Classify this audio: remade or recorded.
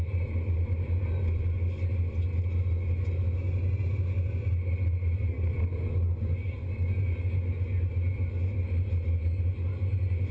recorded